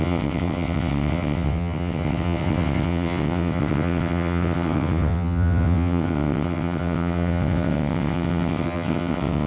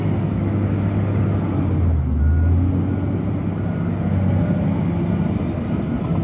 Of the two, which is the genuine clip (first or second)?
second